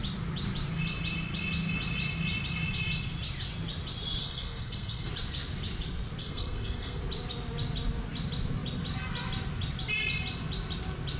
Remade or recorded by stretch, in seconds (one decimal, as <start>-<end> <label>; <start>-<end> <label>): 0.0-4.2 recorded; 4.2-5.1 remade; 5.1-6.2 recorded; 6.2-7.0 remade; 7.0-11.2 recorded